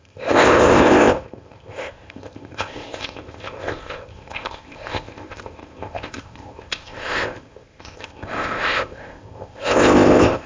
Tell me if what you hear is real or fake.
fake